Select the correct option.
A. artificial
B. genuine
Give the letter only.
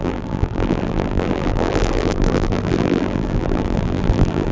A